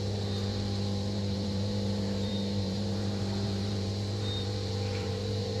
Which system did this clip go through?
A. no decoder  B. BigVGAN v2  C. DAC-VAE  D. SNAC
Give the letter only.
B